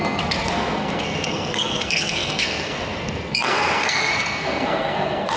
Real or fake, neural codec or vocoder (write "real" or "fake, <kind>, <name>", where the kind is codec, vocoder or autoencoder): fake, codec, SNAC